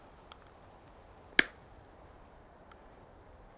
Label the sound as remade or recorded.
recorded